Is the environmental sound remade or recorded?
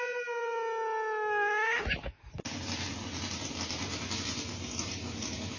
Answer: recorded